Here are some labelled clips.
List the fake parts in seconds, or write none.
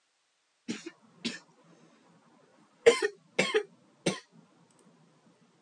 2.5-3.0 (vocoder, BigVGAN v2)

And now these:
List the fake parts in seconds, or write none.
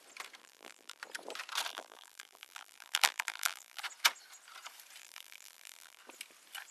0.4-1.0 (vocoder, BigVGAN v2); 1.7-3.8; 5.0-6.0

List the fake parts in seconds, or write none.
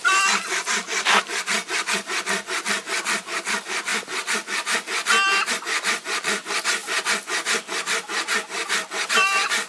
0.0-3.9 (vocoder, BigVGAN v2); 5.5-6.8; 9.1-9.7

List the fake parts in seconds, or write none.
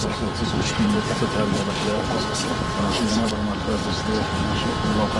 0.4-3.3 (vocoder, BigVGAN v2)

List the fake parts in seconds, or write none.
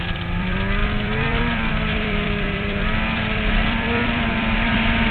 0.0-5.1 (vocoder, BigVGAN v2)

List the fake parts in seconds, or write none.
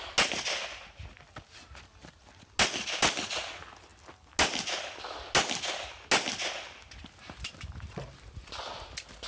none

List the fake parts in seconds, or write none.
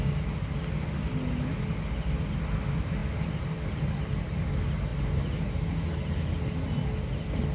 3.0-4.5 (vocoder, BigVGAN v2)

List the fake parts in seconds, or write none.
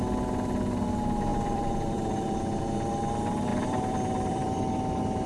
1.3-2.6 (vocoder, BigVGAN v2); 3.5-4.7